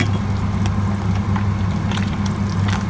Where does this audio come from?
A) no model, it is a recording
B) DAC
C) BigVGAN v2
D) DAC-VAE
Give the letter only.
A